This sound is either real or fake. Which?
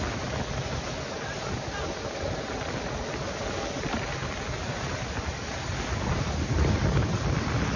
real